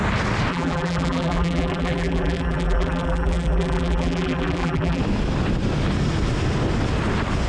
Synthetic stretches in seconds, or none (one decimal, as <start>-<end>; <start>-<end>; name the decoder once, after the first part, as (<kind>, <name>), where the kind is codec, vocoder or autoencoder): 0.5-5.0 (vocoder, BigVGAN v2)